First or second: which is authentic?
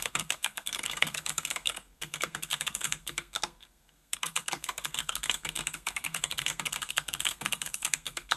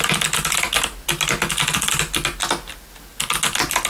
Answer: second